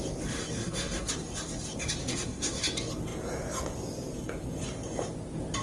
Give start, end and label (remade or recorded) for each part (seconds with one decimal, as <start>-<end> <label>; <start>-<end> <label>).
0.0-0.6 recorded; 0.6-1.1 remade; 1.1-2.0 recorded; 2.0-2.6 remade; 2.6-5.6 recorded